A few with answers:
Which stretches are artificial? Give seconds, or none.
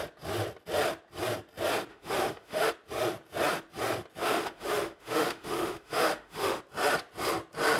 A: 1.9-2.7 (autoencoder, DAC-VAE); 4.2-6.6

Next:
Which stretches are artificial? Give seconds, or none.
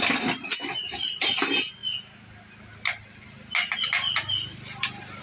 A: none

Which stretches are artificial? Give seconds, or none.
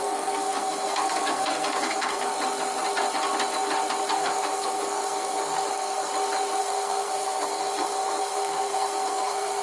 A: 0.0-2.3 (codec, SNAC); 4.1-6.1; 6.6-9.6